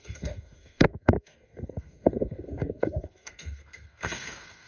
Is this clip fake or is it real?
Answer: fake